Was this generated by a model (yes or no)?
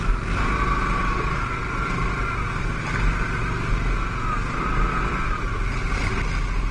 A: no